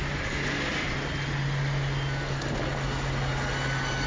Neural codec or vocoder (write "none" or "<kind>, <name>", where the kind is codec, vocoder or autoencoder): none